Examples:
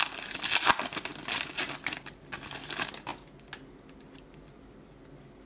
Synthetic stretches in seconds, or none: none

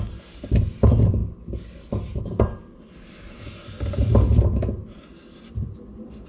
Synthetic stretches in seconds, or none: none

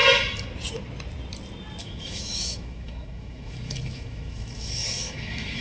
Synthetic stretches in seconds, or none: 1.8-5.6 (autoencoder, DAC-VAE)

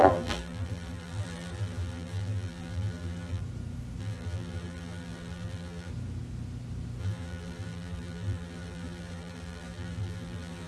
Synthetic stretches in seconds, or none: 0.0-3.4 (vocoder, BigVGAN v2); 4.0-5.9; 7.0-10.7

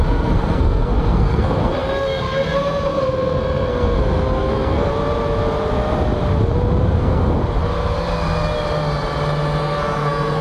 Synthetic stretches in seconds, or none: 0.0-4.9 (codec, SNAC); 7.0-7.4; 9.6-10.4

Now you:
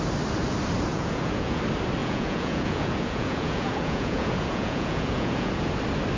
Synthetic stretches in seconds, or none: 0.9-1.6 (vocoder, Vocos); 2.0-5.7

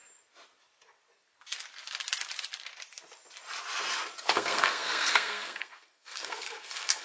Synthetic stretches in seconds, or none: 4.2-7.0 (codec, SNAC)

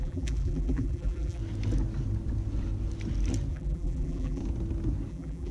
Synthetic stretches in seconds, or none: 0.0-1.4 (vocoder, BigVGAN v2); 3.5-4.4; 5.1-5.5